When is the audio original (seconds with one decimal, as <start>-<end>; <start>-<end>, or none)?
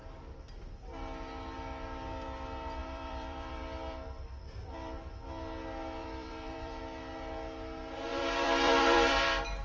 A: 0.0-2.8; 3.6-6.0; 6.8-8.1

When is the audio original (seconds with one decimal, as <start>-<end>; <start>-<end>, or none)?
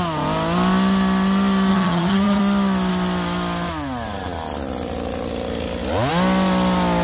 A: 0.0-1.7; 2.4-7.0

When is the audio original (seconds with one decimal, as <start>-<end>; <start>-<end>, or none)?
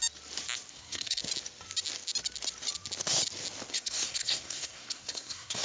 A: 0.0-0.7; 1.2-3.7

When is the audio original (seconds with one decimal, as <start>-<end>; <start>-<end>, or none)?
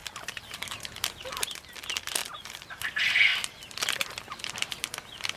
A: 0.7-2.2; 2.9-5.4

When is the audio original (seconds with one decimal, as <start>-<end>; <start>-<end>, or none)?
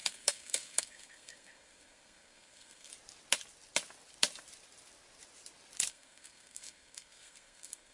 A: 2.9-5.9